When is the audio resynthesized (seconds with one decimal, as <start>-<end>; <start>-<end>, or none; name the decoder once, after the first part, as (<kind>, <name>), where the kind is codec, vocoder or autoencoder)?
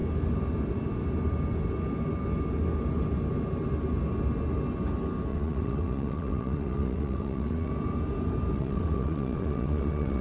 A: 5.3-7.7 (vocoder, WaveNeXt); 8.5-10.2